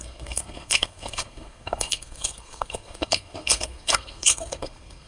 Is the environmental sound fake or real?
fake